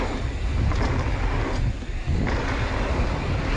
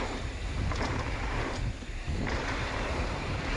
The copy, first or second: second